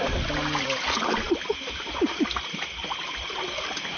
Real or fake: real